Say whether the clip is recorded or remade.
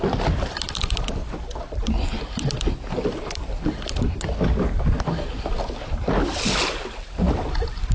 recorded